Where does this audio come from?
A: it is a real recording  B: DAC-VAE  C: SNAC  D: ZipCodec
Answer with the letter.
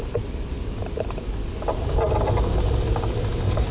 A